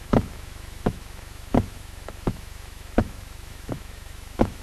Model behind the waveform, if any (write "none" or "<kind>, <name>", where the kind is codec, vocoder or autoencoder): autoencoder, DAC-VAE